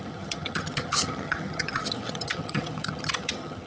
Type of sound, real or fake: fake